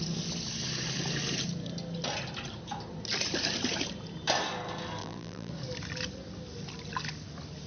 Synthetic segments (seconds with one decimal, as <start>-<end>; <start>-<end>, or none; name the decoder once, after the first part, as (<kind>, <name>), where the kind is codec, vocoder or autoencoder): 5.0-5.5 (vocoder, BigVGAN v2)